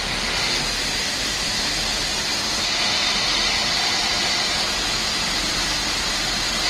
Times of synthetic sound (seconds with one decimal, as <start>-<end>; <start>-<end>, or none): none